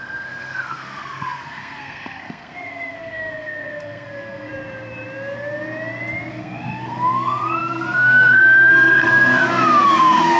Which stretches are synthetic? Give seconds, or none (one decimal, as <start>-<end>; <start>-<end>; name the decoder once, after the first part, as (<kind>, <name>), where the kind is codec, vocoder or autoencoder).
0.0-4.5 (codec, SNAC); 6.3-10.4